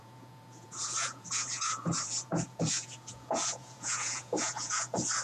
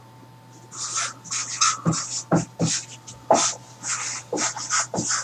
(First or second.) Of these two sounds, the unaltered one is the second